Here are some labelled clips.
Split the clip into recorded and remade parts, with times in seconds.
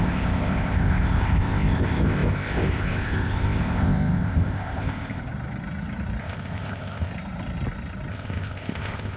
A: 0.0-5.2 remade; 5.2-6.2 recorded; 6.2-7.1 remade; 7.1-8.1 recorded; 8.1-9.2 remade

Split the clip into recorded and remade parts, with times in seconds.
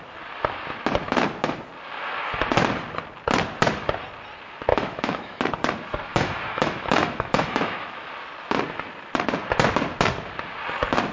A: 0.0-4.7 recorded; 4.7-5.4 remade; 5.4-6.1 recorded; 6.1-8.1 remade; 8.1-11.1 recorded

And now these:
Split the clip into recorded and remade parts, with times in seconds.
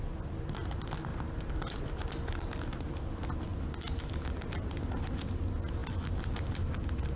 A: 0.0-7.2 recorded